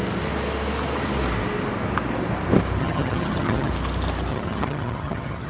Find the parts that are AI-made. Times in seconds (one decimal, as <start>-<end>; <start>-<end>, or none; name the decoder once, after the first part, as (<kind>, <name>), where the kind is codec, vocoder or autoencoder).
2.8-3.7 (vocoder, HiFi-GAN); 4.3-5.5